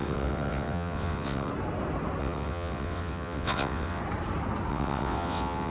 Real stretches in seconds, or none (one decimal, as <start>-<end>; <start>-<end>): 1.5-2.2; 4.0-4.7

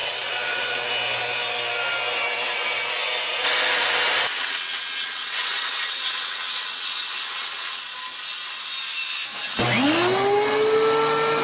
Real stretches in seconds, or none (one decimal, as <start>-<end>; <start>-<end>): 0.9-4.3; 7.8-11.4

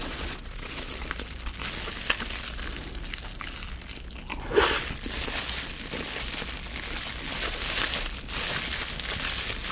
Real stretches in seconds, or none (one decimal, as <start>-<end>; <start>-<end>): 0.9-9.7

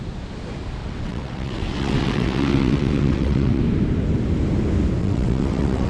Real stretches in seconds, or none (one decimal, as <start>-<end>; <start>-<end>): 0.0-0.8; 3.6-5.0

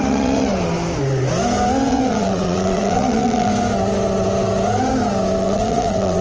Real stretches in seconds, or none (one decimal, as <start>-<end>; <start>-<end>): 0.5-1.9; 3.5-5.4

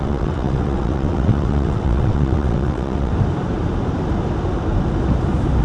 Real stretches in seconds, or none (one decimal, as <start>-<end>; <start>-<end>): 3.1-5.6

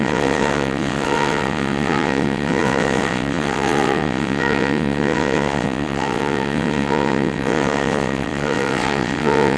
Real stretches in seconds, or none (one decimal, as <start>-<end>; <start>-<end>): none